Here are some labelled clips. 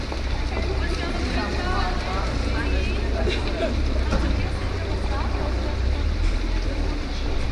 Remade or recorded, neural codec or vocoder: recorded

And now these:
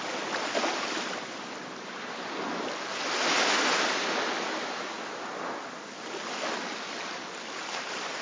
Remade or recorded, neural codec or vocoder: recorded